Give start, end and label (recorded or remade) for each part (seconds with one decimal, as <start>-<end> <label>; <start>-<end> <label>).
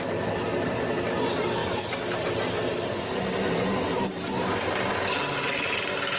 0.0-6.2 recorded